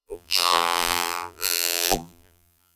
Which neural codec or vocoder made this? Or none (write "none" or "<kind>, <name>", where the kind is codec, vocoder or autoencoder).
vocoder, BigVGAN v2